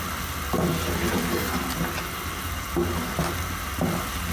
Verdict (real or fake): real